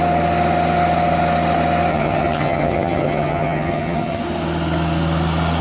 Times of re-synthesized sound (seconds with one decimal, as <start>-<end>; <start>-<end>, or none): 1.9-4.2